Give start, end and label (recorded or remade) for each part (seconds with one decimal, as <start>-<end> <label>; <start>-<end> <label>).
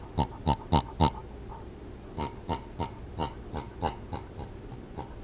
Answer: 0.0-5.2 recorded